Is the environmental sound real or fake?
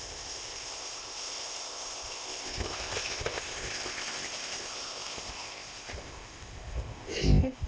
fake